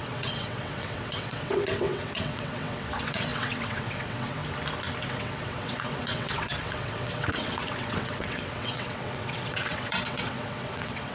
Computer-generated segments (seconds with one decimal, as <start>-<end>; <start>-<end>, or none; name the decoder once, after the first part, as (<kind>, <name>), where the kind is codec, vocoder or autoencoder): 0.0-4.4 (vocoder, WaveNeXt); 5.0-11.1

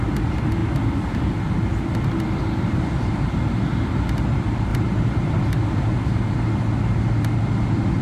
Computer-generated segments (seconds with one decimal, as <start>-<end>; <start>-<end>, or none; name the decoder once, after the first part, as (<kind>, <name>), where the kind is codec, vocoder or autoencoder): 4.7-6.5 (vocoder, BigVGAN v2)

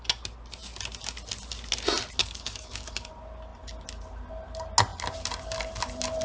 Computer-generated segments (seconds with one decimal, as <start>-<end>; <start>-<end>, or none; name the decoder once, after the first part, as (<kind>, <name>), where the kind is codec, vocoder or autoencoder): 2.2-3.1 (codec, DAC)

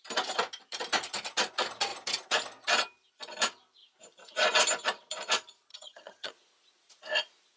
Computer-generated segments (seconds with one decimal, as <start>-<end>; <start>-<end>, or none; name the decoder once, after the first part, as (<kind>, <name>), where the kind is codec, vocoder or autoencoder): 5.7-6.3 (vocoder, HiFi-GAN)

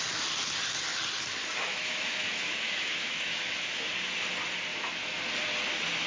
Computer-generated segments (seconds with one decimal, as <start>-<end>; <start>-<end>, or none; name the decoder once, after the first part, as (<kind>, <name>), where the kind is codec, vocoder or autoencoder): 1.7-3.9 (autoencoder, DAC-VAE); 4.7-5.2

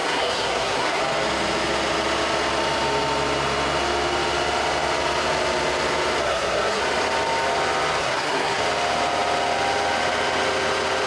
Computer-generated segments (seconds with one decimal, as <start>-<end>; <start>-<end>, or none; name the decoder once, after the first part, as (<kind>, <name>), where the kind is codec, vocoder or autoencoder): 0.0-1.0 (codec, SNAC); 6.2-6.8; 8.0-8.6

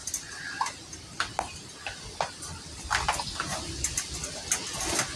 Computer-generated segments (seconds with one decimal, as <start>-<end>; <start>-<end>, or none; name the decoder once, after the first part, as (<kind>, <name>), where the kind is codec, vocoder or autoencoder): none